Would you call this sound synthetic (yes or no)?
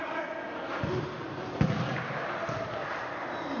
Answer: no